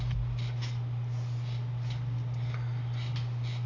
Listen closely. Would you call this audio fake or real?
real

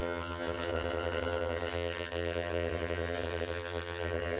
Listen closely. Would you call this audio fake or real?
fake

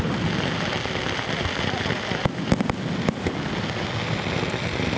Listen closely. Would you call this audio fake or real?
real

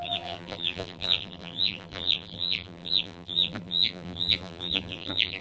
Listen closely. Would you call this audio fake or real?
fake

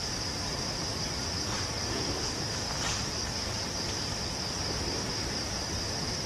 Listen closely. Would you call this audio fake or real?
fake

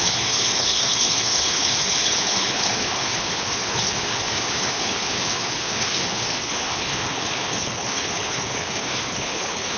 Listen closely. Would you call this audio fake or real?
fake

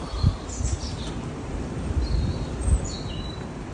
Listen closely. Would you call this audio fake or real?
real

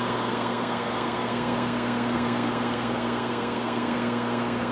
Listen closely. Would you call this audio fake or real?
fake